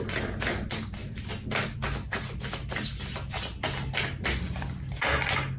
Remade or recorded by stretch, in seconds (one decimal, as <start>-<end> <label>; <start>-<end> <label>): 0.0-5.6 recorded